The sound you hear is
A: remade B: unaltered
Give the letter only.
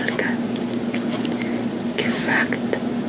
B